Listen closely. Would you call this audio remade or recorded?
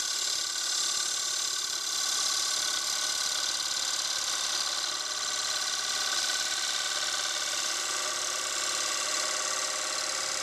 recorded